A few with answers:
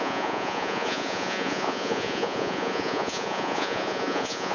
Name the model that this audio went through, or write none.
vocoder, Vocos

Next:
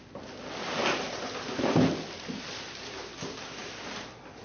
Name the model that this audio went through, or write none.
none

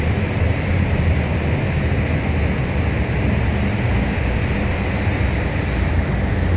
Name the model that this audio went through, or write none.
none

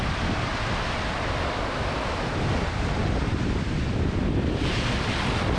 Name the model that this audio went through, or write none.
none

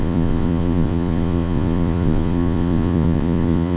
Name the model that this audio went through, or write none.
vocoder, Vocos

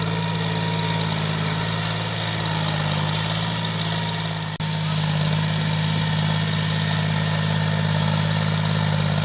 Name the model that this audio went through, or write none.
none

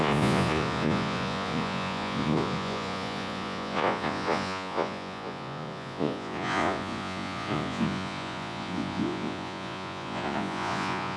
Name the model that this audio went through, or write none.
vocoder, Vocos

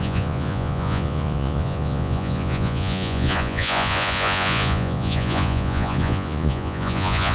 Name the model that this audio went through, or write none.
vocoder, Vocos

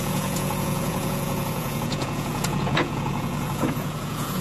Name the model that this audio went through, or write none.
vocoder, Vocos